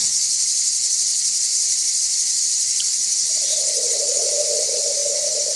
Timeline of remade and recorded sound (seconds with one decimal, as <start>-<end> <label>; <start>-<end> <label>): 0.0-1.5 recorded; 1.5-4.1 remade; 4.1-5.0 recorded; 5.0-5.6 remade